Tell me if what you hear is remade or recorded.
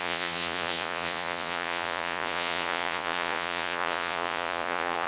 remade